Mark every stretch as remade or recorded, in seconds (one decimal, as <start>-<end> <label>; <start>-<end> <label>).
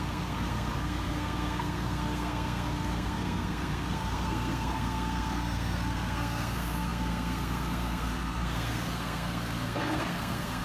0.0-10.6 remade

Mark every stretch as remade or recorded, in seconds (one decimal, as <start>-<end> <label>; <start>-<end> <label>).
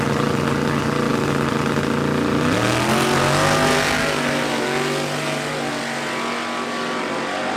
0.0-7.6 recorded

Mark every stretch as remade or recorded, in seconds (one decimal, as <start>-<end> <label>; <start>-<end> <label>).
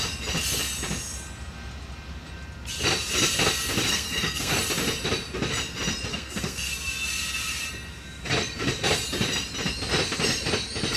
0.0-3.9 recorded; 3.9-4.5 remade; 4.5-6.1 recorded; 6.1-6.7 remade; 6.7-11.0 recorded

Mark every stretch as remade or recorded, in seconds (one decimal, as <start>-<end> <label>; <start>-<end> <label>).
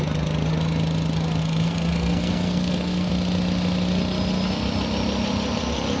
0.0-1.4 recorded; 1.4-3.1 remade; 3.1-6.0 recorded